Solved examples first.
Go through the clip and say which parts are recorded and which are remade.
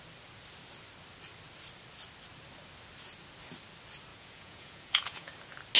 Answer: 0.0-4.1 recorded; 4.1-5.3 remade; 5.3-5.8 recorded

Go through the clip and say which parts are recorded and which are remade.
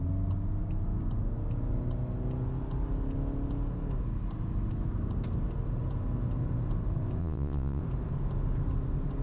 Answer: 0.0-7.2 recorded; 7.2-7.8 remade; 7.8-9.2 recorded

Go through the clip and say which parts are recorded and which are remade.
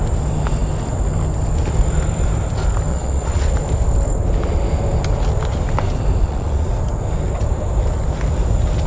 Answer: 0.0-2.9 recorded; 2.9-3.5 remade; 3.5-6.2 recorded; 6.2-6.7 remade; 6.7-8.9 recorded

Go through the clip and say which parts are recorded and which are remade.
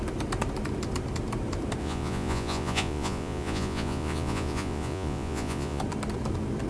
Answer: 0.0-1.8 recorded; 1.8-5.8 remade; 5.8-6.7 recorded